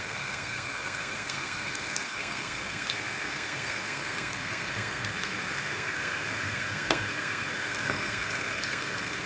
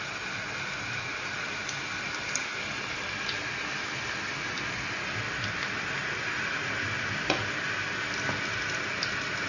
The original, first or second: second